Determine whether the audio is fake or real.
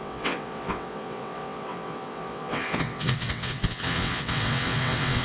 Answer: fake